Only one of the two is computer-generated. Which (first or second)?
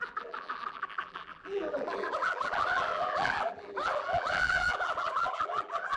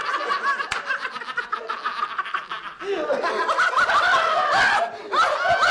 first